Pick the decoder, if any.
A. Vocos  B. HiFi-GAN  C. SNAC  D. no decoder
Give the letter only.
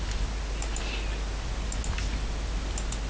D